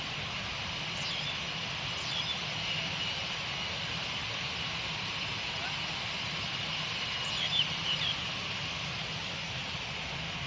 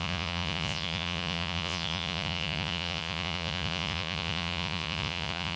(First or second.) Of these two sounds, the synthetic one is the second